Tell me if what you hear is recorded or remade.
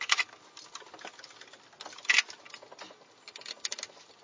recorded